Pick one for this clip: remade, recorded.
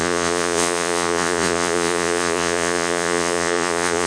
remade